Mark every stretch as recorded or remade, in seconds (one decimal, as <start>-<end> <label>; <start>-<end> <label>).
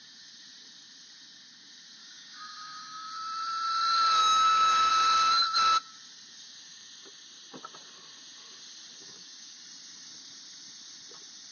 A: 0.0-2.0 recorded; 2.0-3.1 remade; 3.1-4.2 recorded; 4.2-4.9 remade; 4.9-9.0 recorded; 9.0-9.6 remade; 9.6-11.5 recorded